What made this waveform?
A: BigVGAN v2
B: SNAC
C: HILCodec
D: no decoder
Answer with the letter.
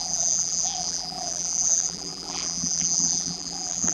A